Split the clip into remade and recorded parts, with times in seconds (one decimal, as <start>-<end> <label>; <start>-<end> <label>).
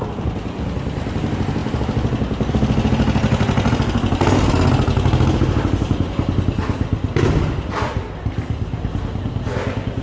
0.0-10.0 recorded